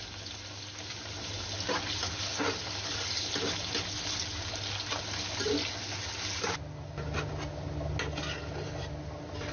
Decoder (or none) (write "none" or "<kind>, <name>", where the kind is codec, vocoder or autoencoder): none